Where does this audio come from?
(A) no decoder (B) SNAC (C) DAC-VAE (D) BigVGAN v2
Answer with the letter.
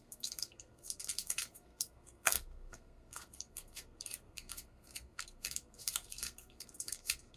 B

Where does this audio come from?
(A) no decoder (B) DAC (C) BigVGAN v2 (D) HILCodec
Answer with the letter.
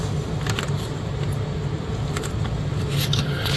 A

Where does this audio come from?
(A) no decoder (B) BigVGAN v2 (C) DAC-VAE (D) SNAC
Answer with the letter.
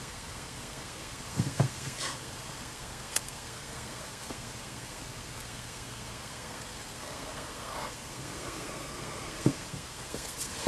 D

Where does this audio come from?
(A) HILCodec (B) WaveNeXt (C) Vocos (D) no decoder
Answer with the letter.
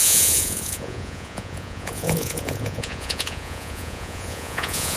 C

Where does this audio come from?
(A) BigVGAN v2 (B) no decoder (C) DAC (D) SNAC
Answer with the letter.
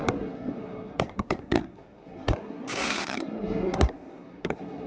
D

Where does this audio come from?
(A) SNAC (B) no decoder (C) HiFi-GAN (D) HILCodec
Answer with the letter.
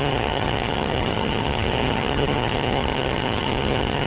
C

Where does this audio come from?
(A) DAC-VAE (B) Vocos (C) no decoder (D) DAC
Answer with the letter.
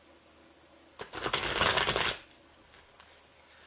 C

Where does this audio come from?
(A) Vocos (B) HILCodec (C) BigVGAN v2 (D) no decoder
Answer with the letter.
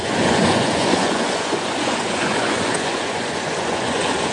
A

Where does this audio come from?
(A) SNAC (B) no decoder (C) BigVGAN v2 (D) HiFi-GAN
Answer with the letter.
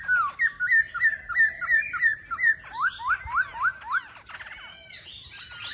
B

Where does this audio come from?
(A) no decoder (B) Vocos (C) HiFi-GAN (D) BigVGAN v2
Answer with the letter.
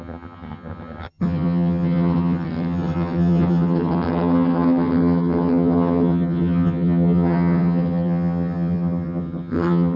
C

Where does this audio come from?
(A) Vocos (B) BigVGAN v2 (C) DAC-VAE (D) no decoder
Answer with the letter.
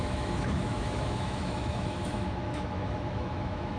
C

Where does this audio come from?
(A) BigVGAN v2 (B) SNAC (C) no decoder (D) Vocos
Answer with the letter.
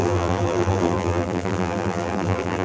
A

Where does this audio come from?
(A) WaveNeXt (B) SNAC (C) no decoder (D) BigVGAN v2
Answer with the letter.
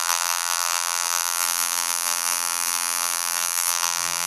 D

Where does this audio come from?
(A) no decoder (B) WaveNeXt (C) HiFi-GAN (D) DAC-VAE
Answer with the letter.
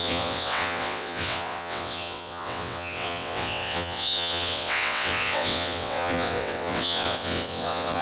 B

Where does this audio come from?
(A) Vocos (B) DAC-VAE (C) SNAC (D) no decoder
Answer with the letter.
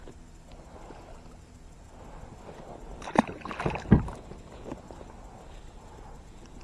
D